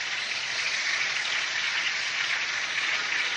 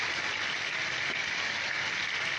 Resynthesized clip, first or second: first